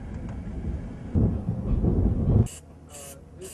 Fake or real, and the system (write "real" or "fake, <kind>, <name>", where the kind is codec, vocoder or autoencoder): real